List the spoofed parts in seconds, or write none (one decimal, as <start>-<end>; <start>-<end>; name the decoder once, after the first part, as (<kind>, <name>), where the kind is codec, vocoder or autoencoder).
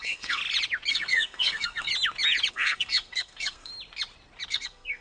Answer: 0.0-0.4 (codec, SNAC); 0.9-1.9; 2.5-3.7; 4.5-5.0